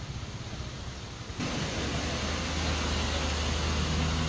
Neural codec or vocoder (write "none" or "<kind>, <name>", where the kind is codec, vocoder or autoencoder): none